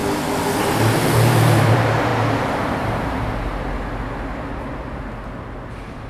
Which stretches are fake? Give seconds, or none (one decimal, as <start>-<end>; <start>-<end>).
1.0-2.1

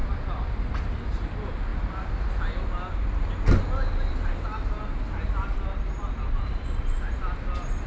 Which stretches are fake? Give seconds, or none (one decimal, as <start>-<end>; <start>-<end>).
none

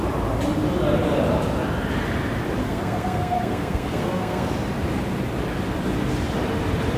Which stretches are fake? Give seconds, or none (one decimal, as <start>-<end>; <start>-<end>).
2.6-4.5

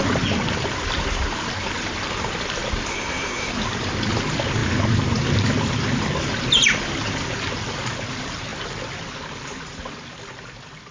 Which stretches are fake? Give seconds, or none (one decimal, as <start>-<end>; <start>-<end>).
2.9-3.5